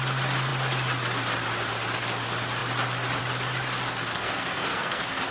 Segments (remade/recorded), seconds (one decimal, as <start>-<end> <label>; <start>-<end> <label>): 0.0-4.1 recorded; 4.1-5.3 remade